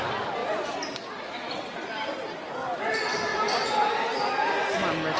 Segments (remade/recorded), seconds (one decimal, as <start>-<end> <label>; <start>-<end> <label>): 0.0-5.2 recorded